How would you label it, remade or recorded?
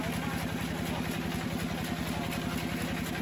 recorded